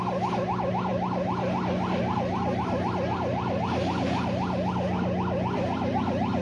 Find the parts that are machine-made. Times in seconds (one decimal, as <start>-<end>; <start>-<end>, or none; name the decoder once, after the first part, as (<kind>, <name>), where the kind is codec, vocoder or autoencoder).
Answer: none